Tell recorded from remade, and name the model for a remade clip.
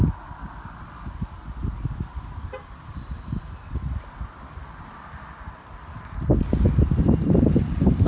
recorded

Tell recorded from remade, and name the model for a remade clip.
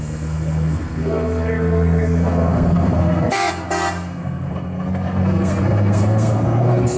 remade, codec, SNAC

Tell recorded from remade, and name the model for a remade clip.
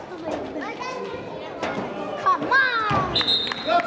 recorded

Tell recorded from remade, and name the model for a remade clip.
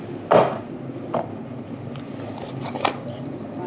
recorded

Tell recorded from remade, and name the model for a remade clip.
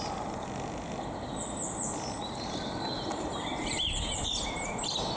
recorded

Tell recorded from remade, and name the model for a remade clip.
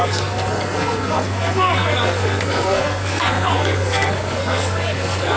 remade, codec, SNAC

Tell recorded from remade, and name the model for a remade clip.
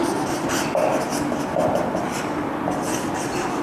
recorded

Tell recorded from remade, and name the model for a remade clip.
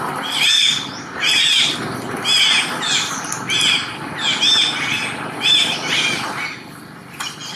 recorded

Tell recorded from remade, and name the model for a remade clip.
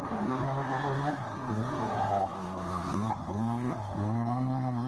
remade, codec, SNAC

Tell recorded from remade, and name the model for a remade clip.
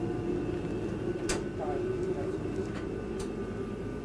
recorded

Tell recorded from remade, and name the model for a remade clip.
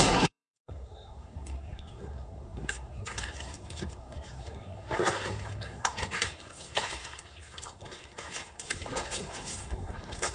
remade, codec, SNAC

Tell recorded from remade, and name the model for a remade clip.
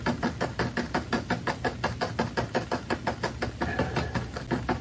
recorded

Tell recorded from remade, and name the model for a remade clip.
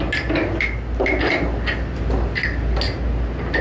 recorded